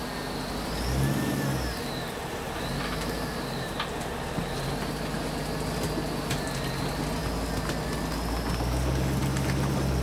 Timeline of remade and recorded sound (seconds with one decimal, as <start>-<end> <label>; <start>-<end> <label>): 0.0-1.8 recorded; 1.8-4.6 remade; 4.6-10.0 recorded